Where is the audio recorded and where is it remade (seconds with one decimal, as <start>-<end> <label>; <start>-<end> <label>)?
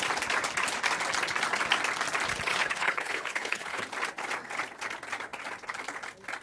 0.0-2.5 recorded; 2.5-3.8 remade; 3.8-6.4 recorded